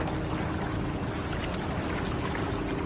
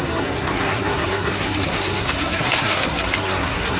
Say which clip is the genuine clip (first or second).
first